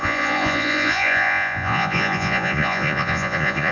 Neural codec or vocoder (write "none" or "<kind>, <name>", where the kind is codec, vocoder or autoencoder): vocoder, Vocos